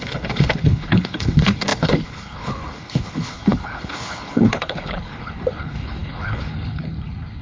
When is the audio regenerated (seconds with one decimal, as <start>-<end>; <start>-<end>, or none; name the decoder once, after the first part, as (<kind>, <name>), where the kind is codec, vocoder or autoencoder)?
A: 0.0-7.4 (codec, HILCodec)